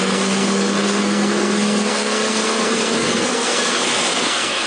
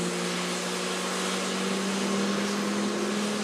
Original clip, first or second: second